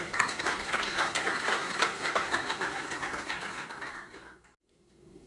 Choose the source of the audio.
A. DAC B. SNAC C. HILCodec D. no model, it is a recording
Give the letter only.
B